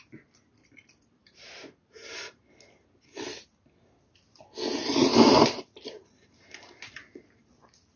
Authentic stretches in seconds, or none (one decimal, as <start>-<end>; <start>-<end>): 0.0-1.2; 2.4-4.8; 6.8-8.0